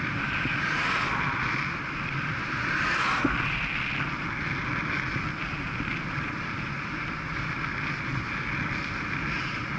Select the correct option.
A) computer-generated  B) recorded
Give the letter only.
B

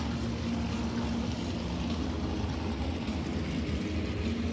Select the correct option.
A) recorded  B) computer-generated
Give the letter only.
A